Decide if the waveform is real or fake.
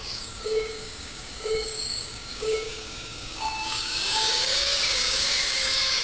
fake